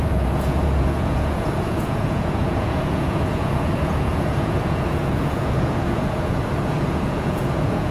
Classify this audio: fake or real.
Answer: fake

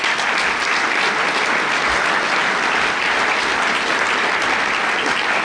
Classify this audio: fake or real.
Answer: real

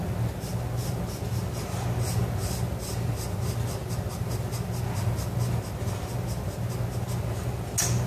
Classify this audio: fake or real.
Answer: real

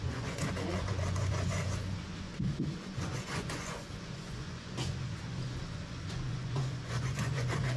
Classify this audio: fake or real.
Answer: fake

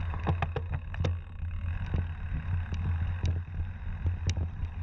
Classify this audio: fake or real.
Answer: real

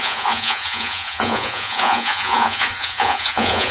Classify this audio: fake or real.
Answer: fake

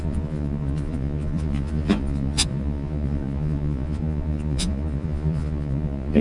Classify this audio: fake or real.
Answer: fake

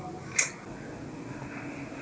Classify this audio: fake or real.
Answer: real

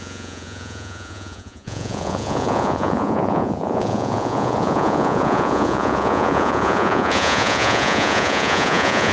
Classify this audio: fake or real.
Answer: fake